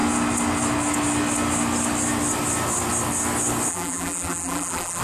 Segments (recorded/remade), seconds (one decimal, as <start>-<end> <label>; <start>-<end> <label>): 0.0-3.7 recorded; 3.7-5.0 remade